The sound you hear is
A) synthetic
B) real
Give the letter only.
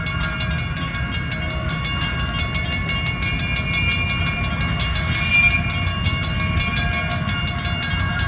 B